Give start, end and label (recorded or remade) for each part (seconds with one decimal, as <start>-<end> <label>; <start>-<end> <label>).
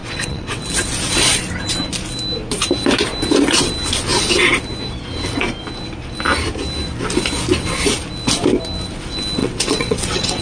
0.0-0.6 remade; 0.6-9.4 recorded; 9.4-10.4 remade